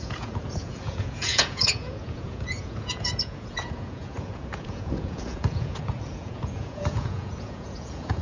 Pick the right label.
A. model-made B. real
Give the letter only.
A